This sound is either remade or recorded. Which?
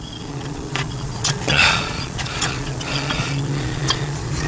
remade